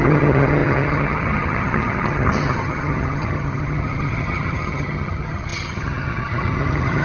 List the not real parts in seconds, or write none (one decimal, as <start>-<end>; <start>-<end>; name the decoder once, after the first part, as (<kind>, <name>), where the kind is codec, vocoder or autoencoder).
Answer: 0.0-7.0 (vocoder, HiFi-GAN)

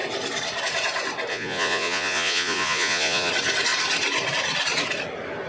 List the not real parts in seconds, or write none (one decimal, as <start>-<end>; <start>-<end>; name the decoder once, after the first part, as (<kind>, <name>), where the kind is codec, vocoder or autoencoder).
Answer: 1.3-3.3 (vocoder, Vocos)